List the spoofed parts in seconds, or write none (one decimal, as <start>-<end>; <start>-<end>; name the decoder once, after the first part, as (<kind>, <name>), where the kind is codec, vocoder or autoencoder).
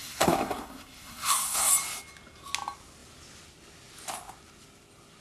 0.0-1.7 (codec, SNAC)